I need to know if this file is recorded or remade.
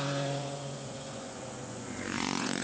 remade